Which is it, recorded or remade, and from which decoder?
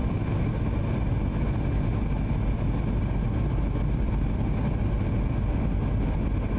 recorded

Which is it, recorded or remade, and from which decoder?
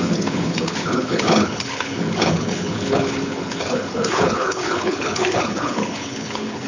remade, codec, HILCodec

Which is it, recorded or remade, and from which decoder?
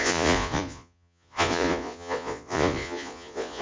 remade, vocoder, Vocos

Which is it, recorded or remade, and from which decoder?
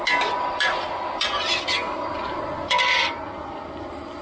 recorded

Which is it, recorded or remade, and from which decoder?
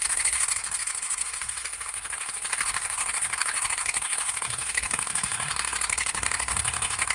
remade, codec, SNAC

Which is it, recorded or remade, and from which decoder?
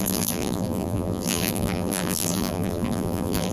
remade, vocoder, BigVGAN v2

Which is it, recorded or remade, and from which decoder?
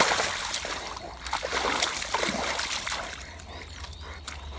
recorded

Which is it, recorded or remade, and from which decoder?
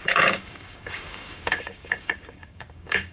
remade, codec, DAC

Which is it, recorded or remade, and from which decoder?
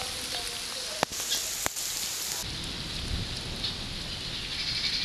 recorded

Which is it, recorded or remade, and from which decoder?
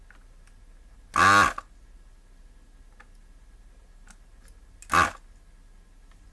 recorded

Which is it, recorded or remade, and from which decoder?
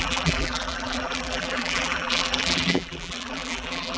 remade, vocoder, BigVGAN v2